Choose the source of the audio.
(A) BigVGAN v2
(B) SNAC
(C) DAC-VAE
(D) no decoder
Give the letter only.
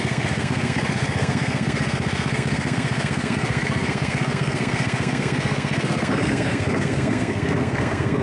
B